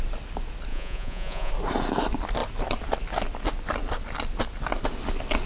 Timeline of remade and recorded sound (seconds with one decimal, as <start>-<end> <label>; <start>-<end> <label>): 0.0-0.7 recorded; 0.7-1.5 remade; 1.5-5.5 recorded